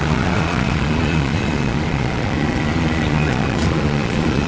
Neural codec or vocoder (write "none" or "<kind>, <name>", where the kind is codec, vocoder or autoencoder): vocoder, Vocos